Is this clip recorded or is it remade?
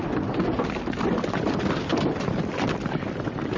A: recorded